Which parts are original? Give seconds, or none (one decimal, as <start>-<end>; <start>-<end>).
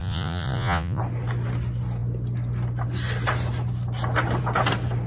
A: 1.0-5.1